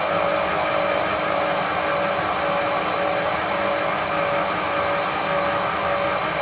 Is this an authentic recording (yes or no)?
yes